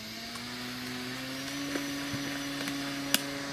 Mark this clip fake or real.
real